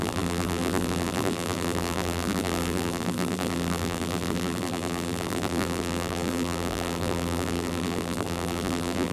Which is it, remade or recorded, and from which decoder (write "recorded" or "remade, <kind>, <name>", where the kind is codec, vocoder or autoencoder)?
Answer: remade, vocoder, BigVGAN v2